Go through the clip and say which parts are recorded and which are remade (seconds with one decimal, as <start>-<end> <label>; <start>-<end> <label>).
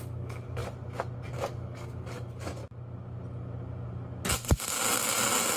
0.0-0.6 remade; 0.6-1.3 recorded; 1.3-2.6 remade; 2.6-5.6 recorded